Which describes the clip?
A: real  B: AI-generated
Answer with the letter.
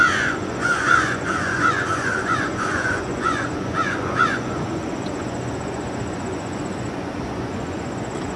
B